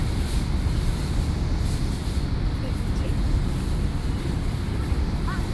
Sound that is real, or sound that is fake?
real